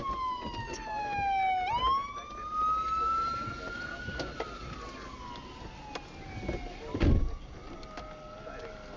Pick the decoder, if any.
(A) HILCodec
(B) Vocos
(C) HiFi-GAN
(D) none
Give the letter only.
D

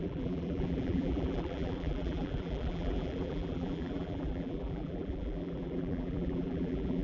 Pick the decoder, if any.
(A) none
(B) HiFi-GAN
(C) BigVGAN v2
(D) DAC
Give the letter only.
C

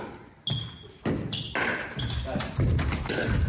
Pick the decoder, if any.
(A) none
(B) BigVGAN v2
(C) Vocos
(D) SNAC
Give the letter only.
A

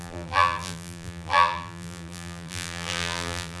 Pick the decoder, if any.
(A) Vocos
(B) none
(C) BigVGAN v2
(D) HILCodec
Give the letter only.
C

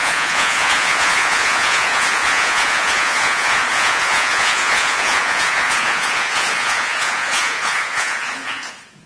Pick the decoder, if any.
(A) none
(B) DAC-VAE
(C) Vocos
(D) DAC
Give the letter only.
C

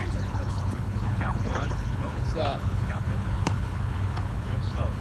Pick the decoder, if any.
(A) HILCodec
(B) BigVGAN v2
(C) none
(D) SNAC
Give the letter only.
A